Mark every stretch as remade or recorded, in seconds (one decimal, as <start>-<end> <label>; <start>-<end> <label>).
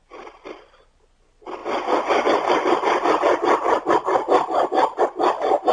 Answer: 0.0-5.7 recorded